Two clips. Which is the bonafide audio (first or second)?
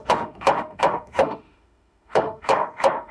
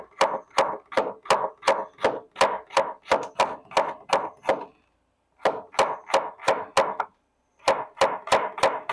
second